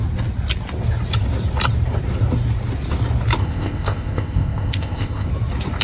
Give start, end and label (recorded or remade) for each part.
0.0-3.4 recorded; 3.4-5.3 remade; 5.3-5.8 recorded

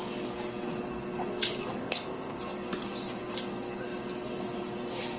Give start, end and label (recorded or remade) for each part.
0.0-1.8 recorded; 1.8-2.4 remade; 2.4-5.2 recorded